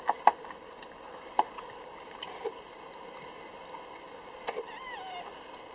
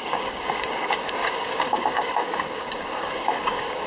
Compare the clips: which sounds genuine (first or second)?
first